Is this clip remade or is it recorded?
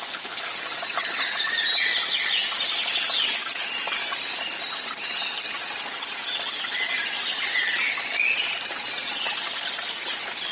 recorded